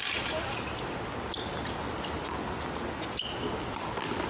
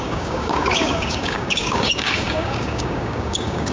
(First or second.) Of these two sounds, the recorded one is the first